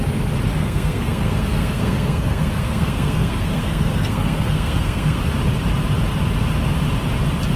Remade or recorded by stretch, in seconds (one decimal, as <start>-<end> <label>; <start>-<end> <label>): 0.0-0.6 recorded; 0.6-5.2 remade; 5.2-7.6 recorded